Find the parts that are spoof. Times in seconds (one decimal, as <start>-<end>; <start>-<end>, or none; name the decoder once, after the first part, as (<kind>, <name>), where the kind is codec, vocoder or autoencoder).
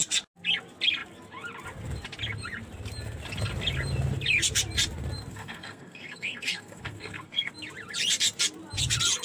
5.3-7.5 (codec, SNAC)